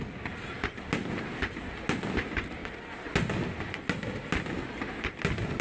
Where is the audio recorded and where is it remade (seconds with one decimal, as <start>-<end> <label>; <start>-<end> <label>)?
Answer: 0.0-5.6 recorded